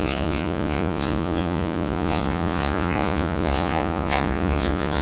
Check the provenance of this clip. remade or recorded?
remade